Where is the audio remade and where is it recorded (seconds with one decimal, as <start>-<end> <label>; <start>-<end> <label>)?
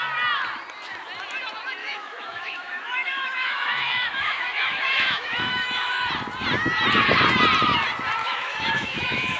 0.0-1.8 recorded; 1.8-6.1 remade; 6.1-8.2 recorded; 8.2-9.4 remade